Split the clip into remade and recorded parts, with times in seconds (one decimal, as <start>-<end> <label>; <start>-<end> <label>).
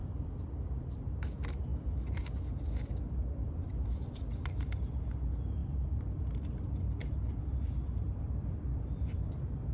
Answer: 0.0-0.7 remade; 0.7-1.7 recorded; 1.7-4.3 remade; 4.3-5.6 recorded; 5.6-9.2 remade; 9.2-9.7 recorded